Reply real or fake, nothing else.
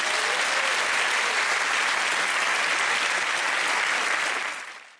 real